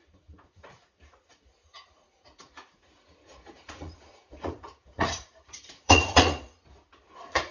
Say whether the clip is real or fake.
fake